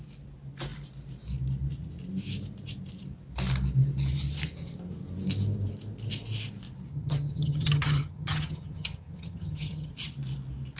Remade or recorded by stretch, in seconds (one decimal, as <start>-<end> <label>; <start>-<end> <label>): 0.0-6.9 recorded; 6.9-9.9 remade; 9.9-10.8 recorded